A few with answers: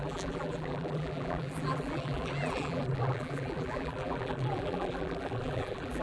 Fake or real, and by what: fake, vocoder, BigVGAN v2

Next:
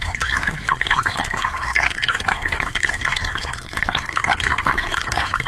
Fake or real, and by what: fake, codec, SNAC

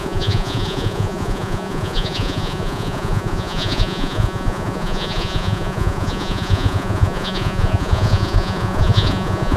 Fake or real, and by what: fake, vocoder, Vocos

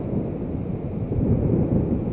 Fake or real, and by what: fake, vocoder, BigVGAN v2